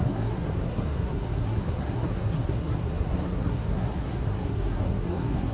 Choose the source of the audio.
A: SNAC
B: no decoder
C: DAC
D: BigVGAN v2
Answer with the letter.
A